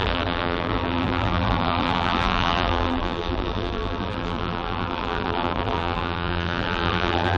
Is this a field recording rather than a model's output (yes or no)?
no